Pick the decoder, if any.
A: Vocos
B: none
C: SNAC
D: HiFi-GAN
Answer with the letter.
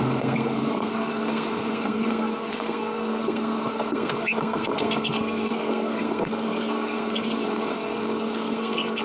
C